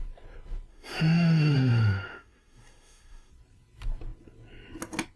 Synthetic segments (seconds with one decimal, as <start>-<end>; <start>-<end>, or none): 0.7-3.3

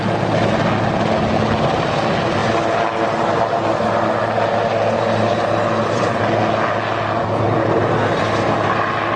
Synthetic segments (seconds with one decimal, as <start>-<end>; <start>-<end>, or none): none